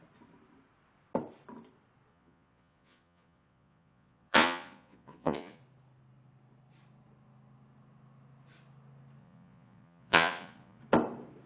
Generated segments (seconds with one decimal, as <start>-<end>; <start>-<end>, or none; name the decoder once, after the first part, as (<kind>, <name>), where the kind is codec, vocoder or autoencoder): 2.1-5.6 (vocoder, Vocos); 9.2-10.8